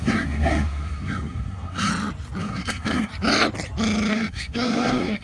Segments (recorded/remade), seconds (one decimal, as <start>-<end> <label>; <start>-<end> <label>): 0.0-1.9 remade; 1.9-2.4 recorded; 2.4-3.1 remade; 3.1-4.1 recorded; 4.1-5.2 remade